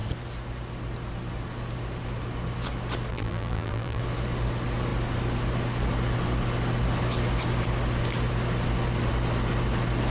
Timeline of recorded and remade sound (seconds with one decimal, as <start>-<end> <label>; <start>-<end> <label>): 0.0-3.1 recorded; 3.1-4.0 remade; 4.0-10.1 recorded